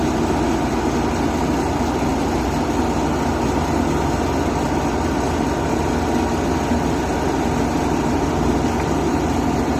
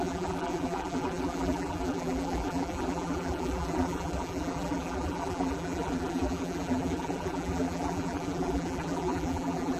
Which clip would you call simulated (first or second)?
second